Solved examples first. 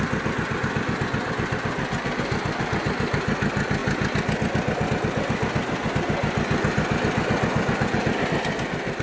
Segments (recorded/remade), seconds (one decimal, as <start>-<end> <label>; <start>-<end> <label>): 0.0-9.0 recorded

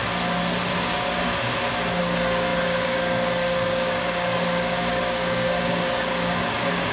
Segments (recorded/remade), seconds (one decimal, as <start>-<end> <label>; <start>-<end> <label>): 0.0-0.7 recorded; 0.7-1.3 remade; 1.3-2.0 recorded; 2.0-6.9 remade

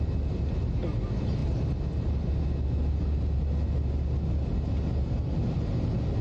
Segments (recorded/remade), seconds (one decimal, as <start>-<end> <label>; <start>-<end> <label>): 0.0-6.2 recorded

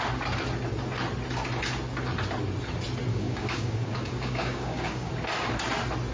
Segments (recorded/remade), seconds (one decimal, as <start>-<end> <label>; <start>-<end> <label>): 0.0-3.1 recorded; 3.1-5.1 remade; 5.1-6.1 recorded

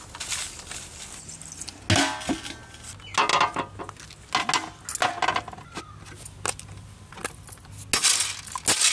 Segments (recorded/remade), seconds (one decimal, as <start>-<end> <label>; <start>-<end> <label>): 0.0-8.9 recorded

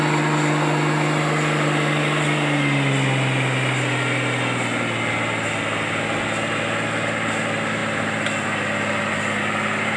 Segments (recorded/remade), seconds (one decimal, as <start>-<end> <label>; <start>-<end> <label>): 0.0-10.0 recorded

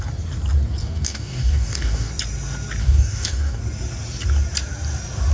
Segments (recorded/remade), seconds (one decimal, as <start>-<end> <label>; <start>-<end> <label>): 0.0-0.8 recorded; 0.8-2.1 remade; 2.1-2.8 recorded; 2.8-3.6 remade; 3.6-5.3 recorded